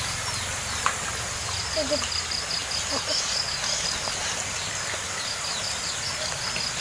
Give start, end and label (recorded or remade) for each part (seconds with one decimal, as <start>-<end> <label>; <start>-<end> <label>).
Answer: 0.0-6.8 recorded